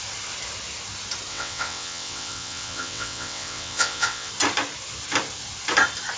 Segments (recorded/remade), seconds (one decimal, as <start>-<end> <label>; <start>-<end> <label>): 0.0-1.3 recorded; 1.3-4.3 remade; 4.3-6.2 recorded